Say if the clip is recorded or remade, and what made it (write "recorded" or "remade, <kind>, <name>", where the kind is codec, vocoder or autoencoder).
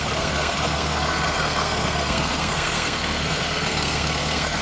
remade, codec, SNAC